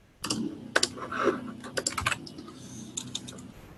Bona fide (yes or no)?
yes